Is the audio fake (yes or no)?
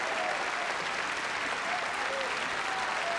no